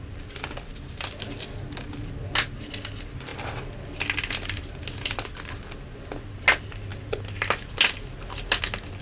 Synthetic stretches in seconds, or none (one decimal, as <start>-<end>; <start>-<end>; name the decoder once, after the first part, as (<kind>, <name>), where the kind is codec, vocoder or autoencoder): none